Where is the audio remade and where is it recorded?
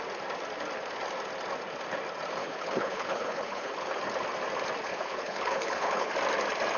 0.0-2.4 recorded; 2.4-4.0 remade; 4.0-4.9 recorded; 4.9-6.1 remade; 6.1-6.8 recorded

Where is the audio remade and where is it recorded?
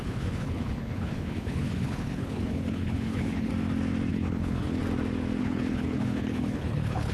0.0-3.5 remade; 3.5-4.1 recorded; 4.1-4.8 remade; 4.8-5.4 recorded; 5.4-7.1 remade